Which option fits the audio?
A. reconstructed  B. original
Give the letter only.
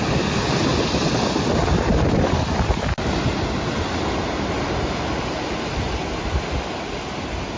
B